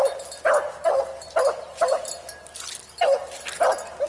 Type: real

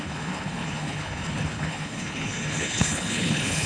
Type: fake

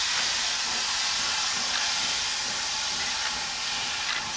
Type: real